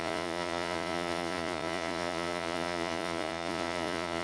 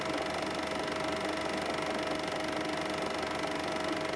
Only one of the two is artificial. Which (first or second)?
first